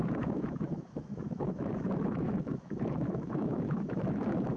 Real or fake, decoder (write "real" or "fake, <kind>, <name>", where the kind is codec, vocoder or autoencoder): fake, autoencoder, DAC-VAE